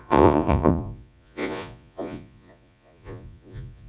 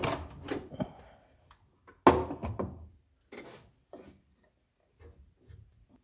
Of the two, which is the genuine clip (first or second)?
second